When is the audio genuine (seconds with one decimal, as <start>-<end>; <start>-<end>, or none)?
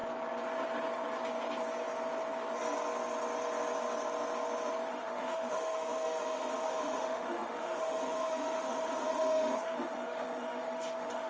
0.0-4.9